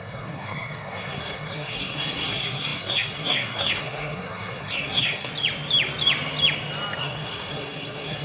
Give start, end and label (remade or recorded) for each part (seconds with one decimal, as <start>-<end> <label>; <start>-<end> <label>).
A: 0.0-5.3 remade; 5.3-7.0 recorded; 7.0-8.2 remade